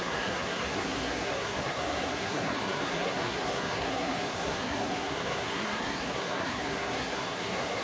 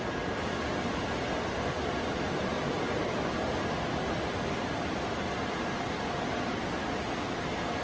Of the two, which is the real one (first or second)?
second